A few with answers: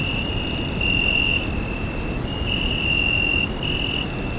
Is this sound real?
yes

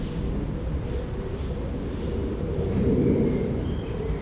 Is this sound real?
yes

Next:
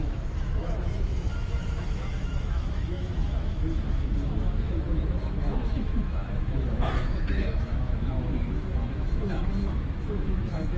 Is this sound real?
no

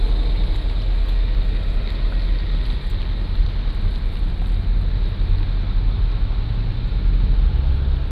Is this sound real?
yes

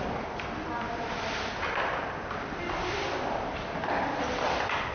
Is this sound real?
yes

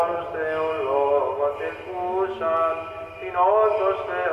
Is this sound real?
yes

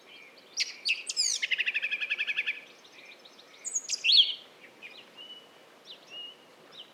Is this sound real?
yes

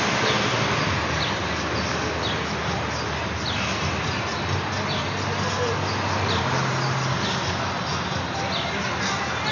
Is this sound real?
yes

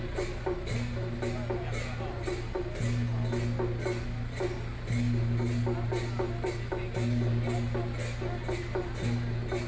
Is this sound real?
yes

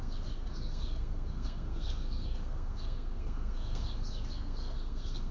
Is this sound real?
no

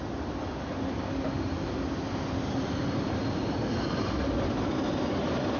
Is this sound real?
yes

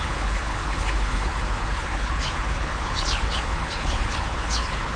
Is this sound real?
no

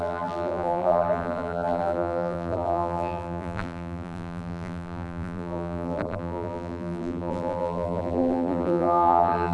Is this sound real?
no